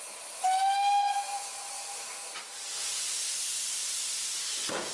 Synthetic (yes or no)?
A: no